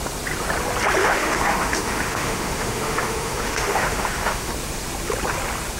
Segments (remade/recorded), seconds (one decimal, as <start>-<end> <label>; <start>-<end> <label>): 0.0-1.0 recorded; 1.0-4.5 remade; 4.5-5.8 recorded

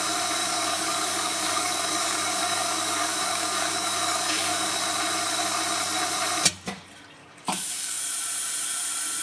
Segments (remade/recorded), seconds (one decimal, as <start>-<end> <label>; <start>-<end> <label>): 0.0-0.4 recorded; 0.4-4.7 remade; 4.7-7.2 recorded; 7.2-8.0 remade; 8.0-9.2 recorded

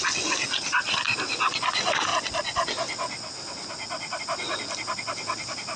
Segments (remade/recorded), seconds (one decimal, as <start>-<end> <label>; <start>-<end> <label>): 0.0-5.8 recorded

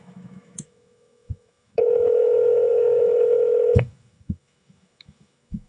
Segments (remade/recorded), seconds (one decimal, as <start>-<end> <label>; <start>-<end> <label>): 0.0-5.7 remade